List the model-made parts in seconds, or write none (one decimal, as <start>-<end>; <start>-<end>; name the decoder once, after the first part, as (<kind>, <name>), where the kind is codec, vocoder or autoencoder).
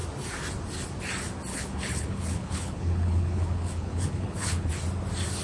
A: 1.5-4.7 (codec, HILCodec)